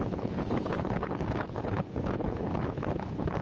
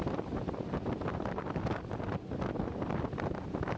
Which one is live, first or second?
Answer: second